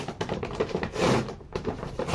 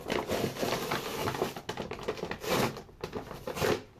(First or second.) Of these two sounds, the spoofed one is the first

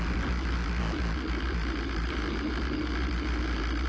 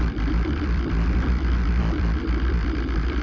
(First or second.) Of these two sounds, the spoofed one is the second